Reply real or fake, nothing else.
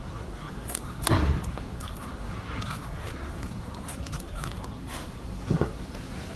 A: fake